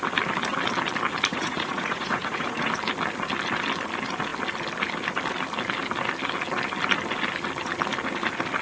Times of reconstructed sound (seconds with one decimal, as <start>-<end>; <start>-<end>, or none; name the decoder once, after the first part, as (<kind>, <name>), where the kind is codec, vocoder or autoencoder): 1.3-2.7 (vocoder, Vocos)